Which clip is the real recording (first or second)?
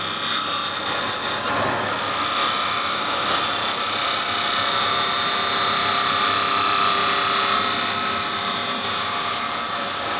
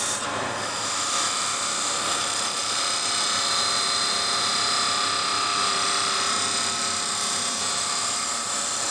first